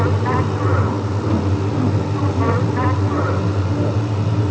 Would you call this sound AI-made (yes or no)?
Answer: no